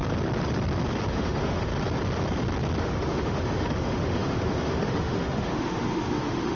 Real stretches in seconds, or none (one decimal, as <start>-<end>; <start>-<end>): 0.0-1.1; 1.7-2.8